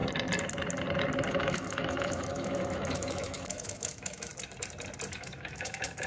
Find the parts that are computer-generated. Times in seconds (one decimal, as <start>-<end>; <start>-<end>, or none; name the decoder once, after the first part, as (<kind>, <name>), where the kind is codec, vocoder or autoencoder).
1.3-4.3 (autoencoder, DAC-VAE); 5.1-6.1